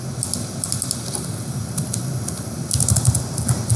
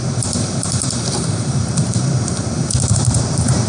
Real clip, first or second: first